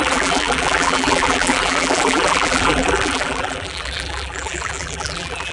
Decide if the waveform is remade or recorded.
remade